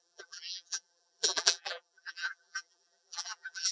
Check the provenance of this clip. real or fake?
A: fake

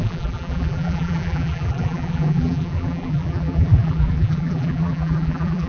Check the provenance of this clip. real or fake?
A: fake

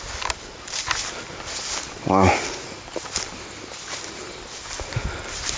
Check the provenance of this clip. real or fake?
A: real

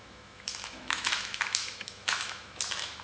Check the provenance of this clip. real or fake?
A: fake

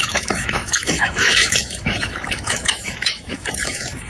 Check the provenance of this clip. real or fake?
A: fake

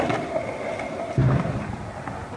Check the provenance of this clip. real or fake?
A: real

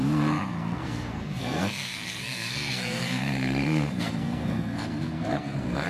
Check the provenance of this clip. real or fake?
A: fake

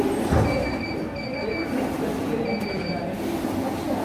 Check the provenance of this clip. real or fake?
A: real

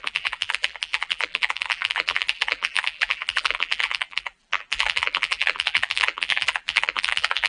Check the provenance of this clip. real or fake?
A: fake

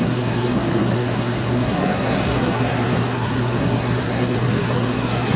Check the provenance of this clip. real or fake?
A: fake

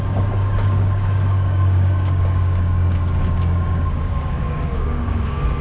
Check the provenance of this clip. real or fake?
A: fake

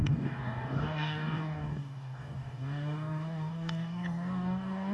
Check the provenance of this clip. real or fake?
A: fake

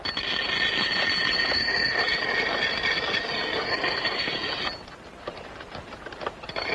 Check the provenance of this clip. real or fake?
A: real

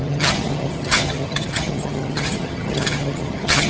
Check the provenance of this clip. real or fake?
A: fake